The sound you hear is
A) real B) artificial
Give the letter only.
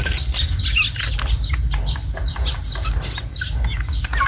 A